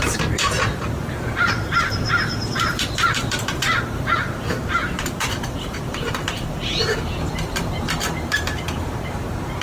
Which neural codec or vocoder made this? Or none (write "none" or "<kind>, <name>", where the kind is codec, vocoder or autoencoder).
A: vocoder, BigVGAN v2